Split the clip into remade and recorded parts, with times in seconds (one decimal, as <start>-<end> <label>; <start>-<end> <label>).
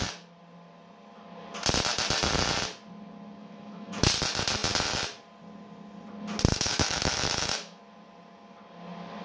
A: 0.0-3.4 recorded; 3.4-4.1 remade; 4.1-6.5 recorded; 6.5-7.8 remade; 7.8-9.2 recorded